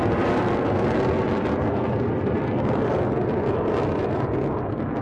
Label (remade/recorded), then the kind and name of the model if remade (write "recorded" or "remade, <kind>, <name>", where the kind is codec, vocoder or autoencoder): recorded